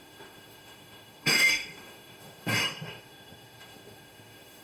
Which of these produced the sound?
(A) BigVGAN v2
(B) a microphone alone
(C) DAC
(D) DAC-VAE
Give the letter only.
D